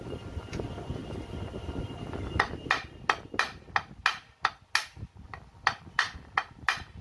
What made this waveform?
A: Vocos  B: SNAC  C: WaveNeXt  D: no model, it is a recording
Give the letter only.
D